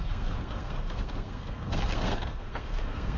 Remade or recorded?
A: remade